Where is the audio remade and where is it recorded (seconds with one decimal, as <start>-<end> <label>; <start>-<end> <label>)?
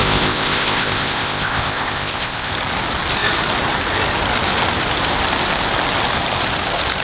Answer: 0.0-2.5 remade; 2.5-7.0 recorded